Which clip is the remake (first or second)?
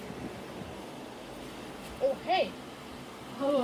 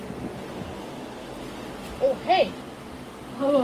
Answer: first